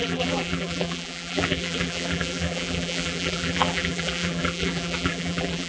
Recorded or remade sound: remade